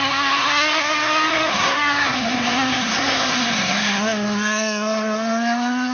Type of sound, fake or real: fake